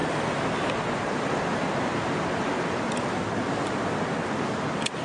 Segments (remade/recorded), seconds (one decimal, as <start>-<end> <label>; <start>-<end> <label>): 0.0-5.0 recorded